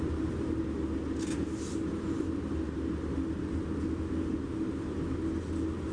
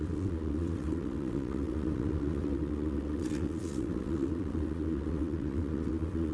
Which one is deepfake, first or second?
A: second